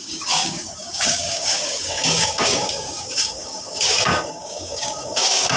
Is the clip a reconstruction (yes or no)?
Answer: yes